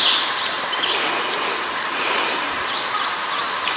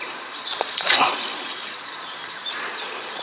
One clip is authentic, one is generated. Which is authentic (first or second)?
first